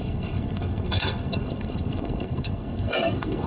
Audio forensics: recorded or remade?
remade